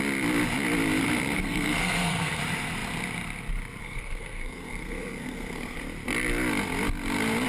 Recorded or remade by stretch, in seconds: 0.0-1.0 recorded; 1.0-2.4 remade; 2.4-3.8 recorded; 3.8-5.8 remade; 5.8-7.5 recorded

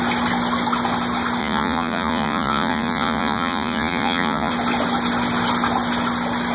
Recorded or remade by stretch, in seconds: 0.0-1.4 recorded; 1.4-4.5 remade; 4.5-6.5 recorded

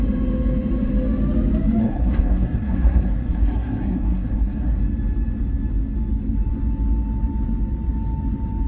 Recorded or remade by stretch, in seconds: 0.0-1.8 recorded; 1.8-4.8 remade; 4.8-8.7 recorded

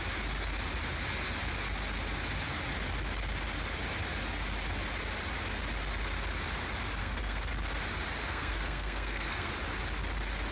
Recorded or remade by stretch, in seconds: 0.0-7.0 recorded; 7.0-7.5 remade; 7.5-8.2 recorded; 8.2-9.5 remade; 9.5-10.5 recorded

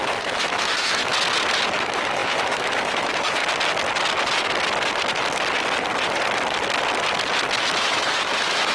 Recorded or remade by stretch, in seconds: 0.0-1.1 remade; 1.1-1.8 recorded; 1.8-3.4 remade; 3.4-7.8 recorded; 7.8-8.7 remade

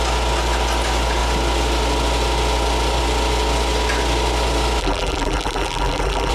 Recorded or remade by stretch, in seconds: 0.0-4.8 recorded; 4.8-6.3 remade